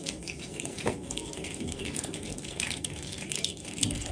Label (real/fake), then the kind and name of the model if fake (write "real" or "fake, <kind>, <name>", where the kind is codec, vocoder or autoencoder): fake, codec, SNAC